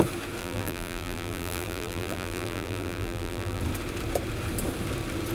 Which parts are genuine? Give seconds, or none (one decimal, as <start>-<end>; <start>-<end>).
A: 0.0-0.4; 3.6-5.3